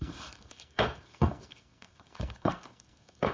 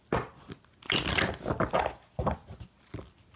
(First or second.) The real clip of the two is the second